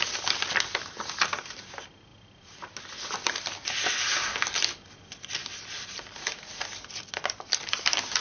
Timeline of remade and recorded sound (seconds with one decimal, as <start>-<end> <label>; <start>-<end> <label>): 0.0-2.1 recorded; 2.1-2.8 remade; 2.8-8.2 recorded